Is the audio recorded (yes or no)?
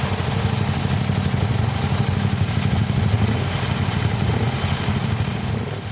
yes